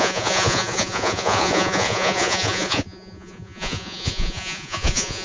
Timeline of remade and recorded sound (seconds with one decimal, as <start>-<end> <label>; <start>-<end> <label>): 0.0-5.2 remade